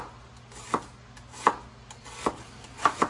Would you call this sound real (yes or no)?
yes